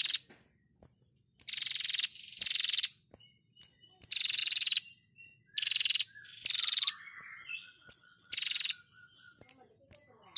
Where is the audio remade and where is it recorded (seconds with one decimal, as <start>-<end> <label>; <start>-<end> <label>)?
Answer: 0.0-7.6 recorded; 7.6-8.3 remade; 8.3-10.4 recorded

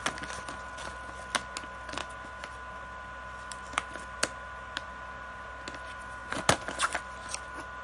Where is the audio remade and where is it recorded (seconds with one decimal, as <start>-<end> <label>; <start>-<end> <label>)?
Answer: 0.0-2.0 recorded; 2.0-4.9 remade; 4.9-6.2 recorded; 6.2-7.0 remade; 7.0-7.8 recorded

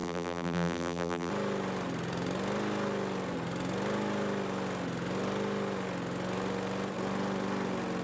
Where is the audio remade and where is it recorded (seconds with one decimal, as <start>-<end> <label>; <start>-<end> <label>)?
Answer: 0.0-1.3 remade; 1.3-8.0 recorded

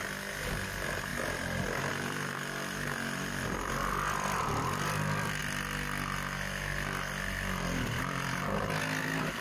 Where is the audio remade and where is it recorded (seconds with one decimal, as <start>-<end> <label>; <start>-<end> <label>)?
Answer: 0.0-5.4 remade; 5.4-8.0 recorded; 8.0-9.4 remade

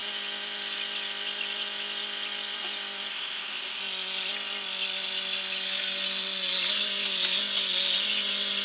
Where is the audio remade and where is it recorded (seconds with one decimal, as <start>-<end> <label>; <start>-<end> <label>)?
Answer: 0.0-3.1 recorded; 3.1-3.8 remade; 3.8-8.6 recorded

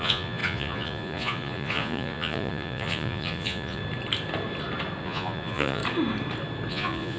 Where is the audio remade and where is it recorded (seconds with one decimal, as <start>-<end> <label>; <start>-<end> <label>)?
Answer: 0.0-3.8 remade; 3.8-5.0 recorded; 5.0-5.8 remade; 5.8-6.7 recorded; 6.7-7.2 remade

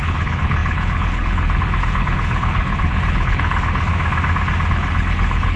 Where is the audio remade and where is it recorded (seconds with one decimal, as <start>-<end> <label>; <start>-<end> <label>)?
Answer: 0.0-3.9 remade; 3.9-4.7 recorded; 4.7-5.6 remade